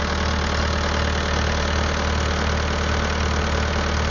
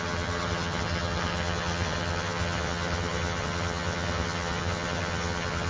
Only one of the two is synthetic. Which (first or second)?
second